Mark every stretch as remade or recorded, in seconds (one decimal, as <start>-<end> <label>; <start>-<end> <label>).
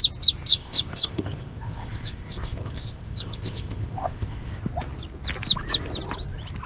0.0-0.5 recorded; 0.5-4.5 remade; 4.5-6.7 recorded